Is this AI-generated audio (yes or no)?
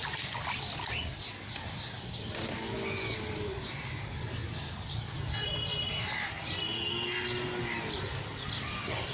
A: no